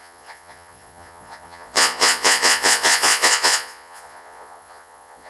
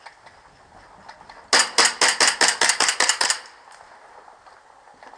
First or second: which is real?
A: second